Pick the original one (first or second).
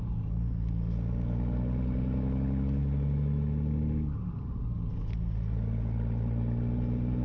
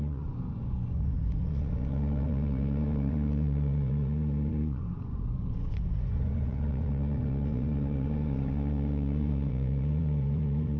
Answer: first